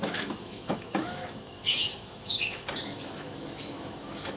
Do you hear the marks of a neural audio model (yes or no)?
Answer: yes